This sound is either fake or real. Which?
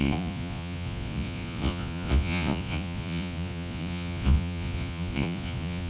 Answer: fake